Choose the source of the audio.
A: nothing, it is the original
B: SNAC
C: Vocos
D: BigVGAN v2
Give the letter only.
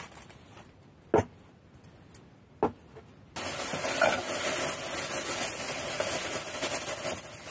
A